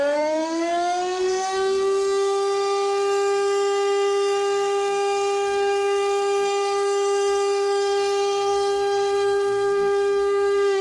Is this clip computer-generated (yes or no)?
yes